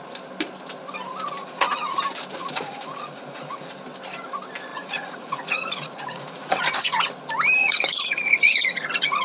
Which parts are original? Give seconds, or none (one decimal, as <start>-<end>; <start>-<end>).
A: 0.0-1.4; 2.0-2.4; 3.7-4.7; 7.1-7.6